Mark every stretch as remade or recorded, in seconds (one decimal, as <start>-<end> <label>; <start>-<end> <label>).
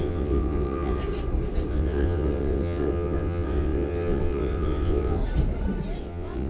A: 0.0-1.0 remade; 1.0-1.7 recorded; 1.7-5.2 remade; 5.2-6.0 recorded; 6.0-6.5 remade